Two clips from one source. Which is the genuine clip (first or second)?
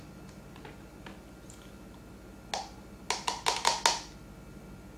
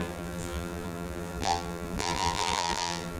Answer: first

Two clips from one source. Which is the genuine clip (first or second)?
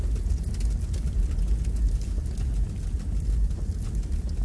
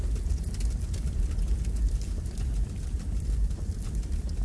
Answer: first